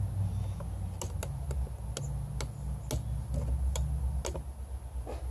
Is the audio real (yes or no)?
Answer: yes